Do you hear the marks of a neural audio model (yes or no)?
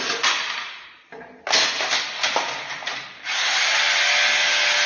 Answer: no